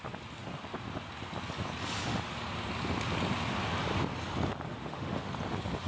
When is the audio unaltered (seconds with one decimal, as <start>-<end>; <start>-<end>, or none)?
0.0-4.7; 5.3-5.9